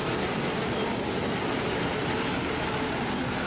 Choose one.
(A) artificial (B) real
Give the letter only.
A